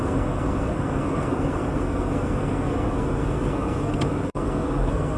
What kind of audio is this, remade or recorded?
remade